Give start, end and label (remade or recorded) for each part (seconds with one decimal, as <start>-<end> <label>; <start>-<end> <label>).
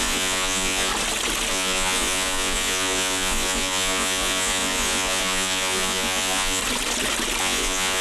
0.0-0.9 remade; 0.9-1.5 recorded; 1.5-6.6 remade; 6.6-7.4 recorded; 7.4-8.0 remade